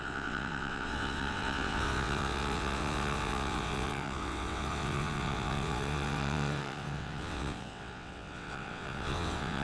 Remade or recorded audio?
remade